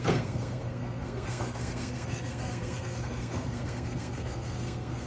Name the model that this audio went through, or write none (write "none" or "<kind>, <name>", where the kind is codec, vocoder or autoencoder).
codec, SNAC